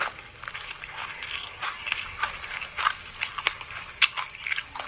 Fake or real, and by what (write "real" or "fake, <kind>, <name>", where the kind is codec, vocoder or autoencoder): real